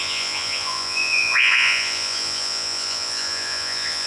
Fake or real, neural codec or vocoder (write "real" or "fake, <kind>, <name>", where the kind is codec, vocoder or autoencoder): fake, vocoder, Vocos